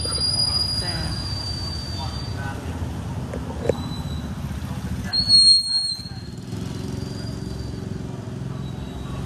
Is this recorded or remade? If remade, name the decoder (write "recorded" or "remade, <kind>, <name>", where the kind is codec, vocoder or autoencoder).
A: recorded